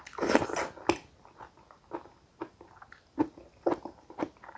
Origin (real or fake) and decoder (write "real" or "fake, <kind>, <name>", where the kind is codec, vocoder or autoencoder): real